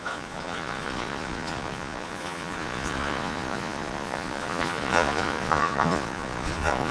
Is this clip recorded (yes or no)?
no